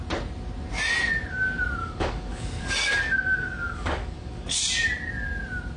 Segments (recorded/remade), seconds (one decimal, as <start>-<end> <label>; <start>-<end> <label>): 0.0-1.8 recorded; 1.8-4.6 remade; 4.6-5.8 recorded